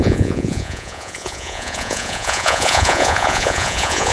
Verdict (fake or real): fake